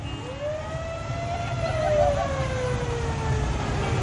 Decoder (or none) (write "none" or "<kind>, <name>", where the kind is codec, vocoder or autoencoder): none